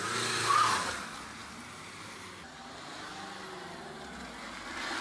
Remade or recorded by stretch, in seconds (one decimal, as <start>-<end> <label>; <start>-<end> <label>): 0.0-5.0 recorded